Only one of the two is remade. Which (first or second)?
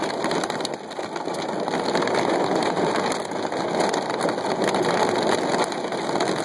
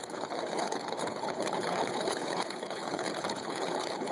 second